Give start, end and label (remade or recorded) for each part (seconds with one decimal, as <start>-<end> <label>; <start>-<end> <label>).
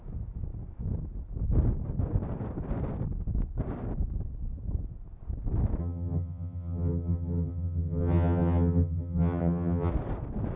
0.0-5.8 recorded; 5.8-9.9 remade; 9.9-10.6 recorded